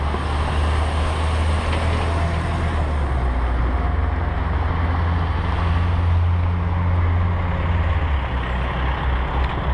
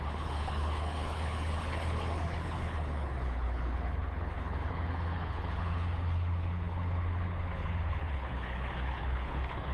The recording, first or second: first